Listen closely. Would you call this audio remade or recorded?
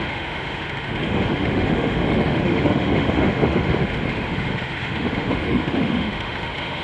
remade